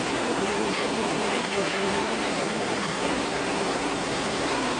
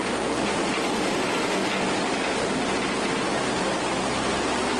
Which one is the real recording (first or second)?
second